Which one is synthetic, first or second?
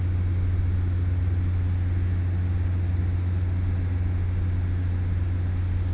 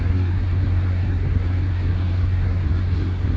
second